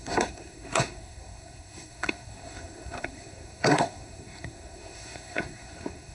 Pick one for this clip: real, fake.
fake